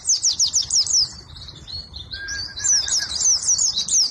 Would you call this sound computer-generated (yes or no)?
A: no